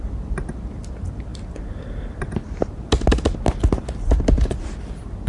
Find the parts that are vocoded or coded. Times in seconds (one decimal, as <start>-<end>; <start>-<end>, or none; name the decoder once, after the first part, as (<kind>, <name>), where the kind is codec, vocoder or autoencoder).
none